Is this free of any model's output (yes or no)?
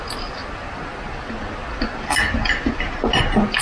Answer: yes